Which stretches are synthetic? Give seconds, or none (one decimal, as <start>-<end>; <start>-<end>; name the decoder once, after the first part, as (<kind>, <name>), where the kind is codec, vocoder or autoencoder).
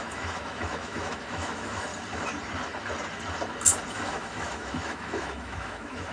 0.0-1.9 (autoencoder, DAC-VAE); 3.9-6.1